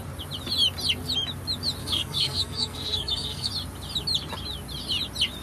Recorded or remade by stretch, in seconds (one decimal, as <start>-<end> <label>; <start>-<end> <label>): 0.0-1.8 recorded; 1.8-3.5 remade; 3.5-5.4 recorded